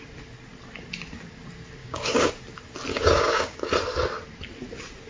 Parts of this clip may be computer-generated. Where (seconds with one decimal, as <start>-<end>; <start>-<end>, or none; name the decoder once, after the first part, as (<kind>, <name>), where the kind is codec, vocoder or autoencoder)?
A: 1.8-2.3 (codec, DAC); 2.9-3.7